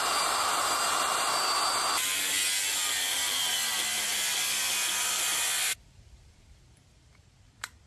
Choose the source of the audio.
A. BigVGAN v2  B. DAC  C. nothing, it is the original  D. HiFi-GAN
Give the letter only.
C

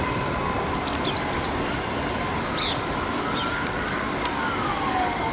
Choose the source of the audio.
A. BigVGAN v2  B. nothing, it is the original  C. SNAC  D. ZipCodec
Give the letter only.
B